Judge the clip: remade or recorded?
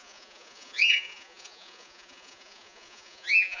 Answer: remade